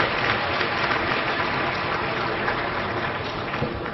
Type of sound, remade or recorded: remade